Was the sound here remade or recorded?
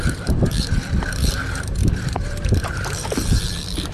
remade